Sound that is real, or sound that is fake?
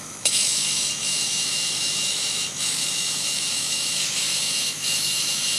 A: fake